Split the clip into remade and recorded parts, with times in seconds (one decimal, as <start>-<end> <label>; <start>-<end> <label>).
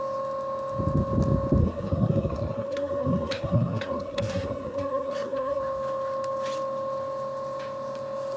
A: 0.0-1.6 recorded; 1.6-5.6 remade; 5.6-8.4 recorded